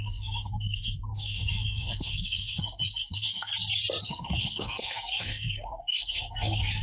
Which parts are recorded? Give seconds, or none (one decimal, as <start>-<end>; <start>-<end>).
3.5-4.0